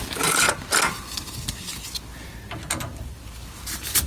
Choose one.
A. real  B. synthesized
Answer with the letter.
A